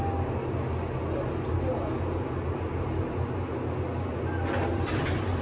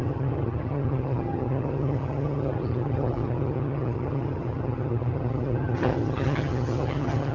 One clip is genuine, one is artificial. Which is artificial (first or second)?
second